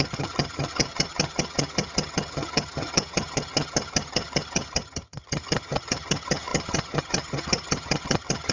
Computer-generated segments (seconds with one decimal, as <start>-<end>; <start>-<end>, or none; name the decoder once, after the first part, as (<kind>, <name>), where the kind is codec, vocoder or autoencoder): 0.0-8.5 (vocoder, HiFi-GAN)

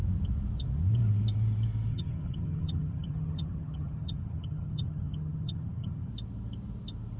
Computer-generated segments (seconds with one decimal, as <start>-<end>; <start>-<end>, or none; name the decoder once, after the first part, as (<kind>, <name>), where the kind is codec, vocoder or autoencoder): 1.9-6.1 (vocoder, HiFi-GAN)

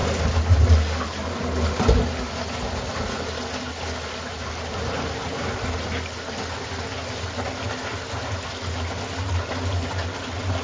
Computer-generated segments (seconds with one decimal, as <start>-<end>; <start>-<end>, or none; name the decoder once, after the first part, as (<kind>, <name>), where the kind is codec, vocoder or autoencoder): none

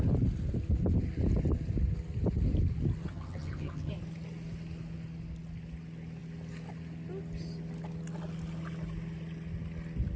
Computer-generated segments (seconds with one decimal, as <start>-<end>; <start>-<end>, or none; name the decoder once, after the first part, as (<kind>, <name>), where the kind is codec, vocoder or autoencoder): 3.1-3.9 (vocoder, HiFi-GAN)

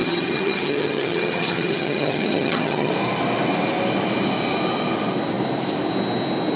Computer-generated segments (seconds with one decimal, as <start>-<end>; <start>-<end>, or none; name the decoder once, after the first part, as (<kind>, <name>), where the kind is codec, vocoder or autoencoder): 0.0-2.9 (vocoder, HiFi-GAN)

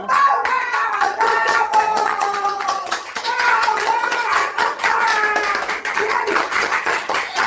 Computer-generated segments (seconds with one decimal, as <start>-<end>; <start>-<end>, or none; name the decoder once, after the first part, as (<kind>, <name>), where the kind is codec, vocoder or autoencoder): 0.0-5.1 (vocoder, HiFi-GAN); 5.8-7.5

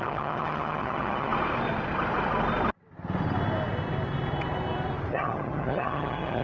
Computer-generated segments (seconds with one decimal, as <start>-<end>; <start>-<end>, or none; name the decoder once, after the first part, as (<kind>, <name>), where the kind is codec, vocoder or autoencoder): 0.0-1.3 (vocoder, HiFi-GAN); 5.1-6.4

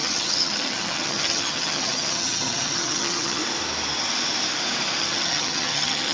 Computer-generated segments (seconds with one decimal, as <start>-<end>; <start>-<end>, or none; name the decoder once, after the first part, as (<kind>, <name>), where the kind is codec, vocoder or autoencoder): 0.0-3.4 (vocoder, HiFi-GAN); 5.0-6.1